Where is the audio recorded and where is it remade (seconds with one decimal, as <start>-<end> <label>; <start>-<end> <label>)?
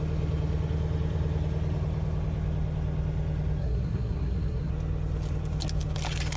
0.0-3.6 recorded; 3.6-4.7 remade; 4.7-6.4 recorded